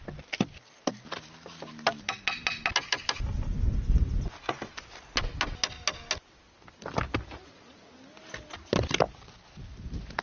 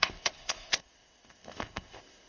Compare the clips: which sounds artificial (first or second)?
second